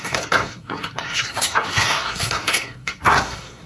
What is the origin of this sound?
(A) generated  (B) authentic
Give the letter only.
A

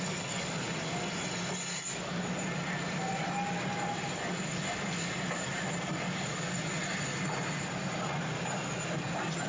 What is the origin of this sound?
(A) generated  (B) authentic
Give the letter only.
B